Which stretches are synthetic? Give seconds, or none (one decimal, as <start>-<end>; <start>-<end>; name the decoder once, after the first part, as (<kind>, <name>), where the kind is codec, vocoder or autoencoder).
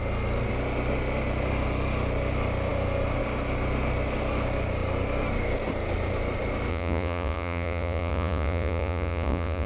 6.7-9.7 (vocoder, Vocos)